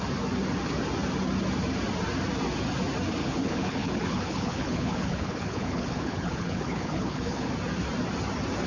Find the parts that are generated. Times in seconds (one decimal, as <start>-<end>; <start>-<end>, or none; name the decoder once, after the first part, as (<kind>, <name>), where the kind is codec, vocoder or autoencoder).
3.2-7.5 (codec, HILCodec)